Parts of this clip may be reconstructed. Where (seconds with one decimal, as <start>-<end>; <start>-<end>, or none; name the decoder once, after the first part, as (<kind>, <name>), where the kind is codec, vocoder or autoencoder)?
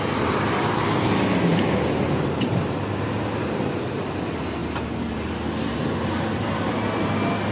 none